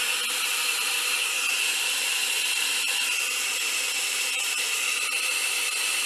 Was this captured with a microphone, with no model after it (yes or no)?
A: yes